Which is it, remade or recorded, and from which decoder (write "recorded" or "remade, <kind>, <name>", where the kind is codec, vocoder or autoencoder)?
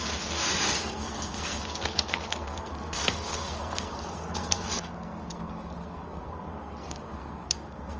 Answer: remade, codec, SNAC